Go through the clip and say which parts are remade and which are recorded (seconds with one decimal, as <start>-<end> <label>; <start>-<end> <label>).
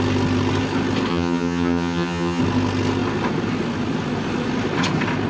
0.0-1.1 recorded; 1.1-2.4 remade; 2.4-5.3 recorded